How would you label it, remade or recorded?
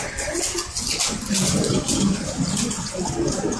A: recorded